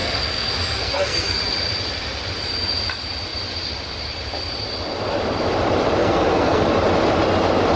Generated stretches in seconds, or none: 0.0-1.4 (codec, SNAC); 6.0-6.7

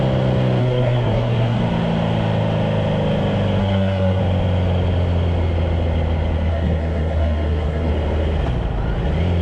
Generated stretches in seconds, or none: 0.6-1.6 (codec, SNAC); 3.6-4.2; 6.5-7.9

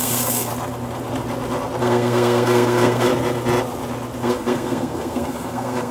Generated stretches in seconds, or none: 0.0-0.5 (codec, SNAC); 1.8-3.1; 4.2-5.9

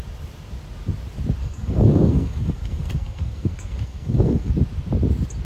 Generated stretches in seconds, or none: 1.4-4.5 (codec, SNAC)

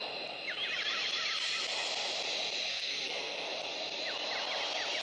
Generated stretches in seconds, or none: 2.7-3.5 (codec, SNAC)